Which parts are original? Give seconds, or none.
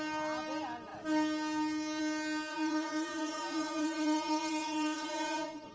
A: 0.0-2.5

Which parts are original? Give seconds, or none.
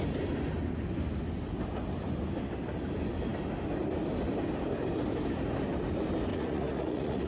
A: 0.0-6.3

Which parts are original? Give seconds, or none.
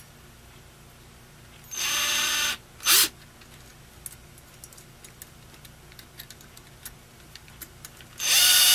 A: 0.0-8.7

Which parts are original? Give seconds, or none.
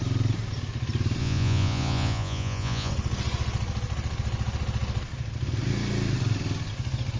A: 0.0-1.2; 2.9-7.2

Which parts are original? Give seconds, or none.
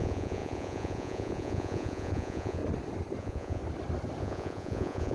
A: 2.6-3.2; 3.6-4.2